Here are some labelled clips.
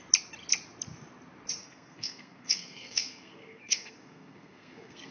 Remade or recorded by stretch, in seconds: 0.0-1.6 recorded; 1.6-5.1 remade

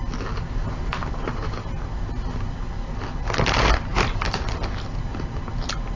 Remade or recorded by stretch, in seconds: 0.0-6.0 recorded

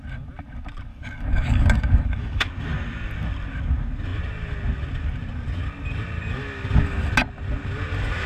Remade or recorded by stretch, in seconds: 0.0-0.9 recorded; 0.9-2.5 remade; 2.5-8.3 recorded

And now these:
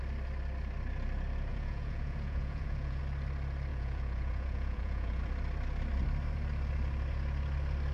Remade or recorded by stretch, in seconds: 0.0-1.5 recorded; 1.5-3.0 remade; 3.0-3.7 recorded; 3.7-5.2 remade; 5.2-7.9 recorded

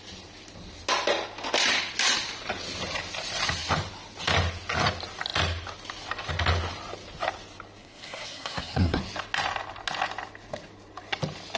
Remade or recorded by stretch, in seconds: 0.0-7.8 recorded; 7.8-9.0 remade; 9.0-11.6 recorded

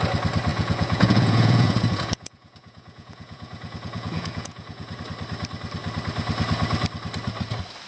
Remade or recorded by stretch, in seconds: 0.0-0.5 recorded; 0.5-5.0 remade; 5.0-7.9 recorded